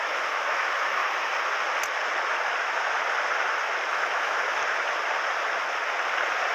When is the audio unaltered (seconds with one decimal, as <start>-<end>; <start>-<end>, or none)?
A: 1.0-3.9; 4.6-6.5